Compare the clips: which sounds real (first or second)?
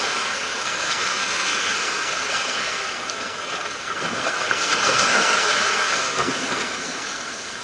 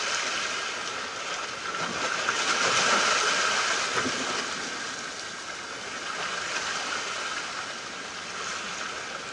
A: second